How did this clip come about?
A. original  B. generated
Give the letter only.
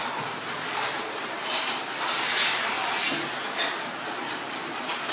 B